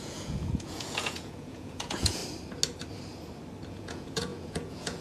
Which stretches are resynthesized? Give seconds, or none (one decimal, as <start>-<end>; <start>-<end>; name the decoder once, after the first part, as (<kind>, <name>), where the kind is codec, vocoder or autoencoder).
0.0-2.2 (vocoder, Vocos); 3.7-5.0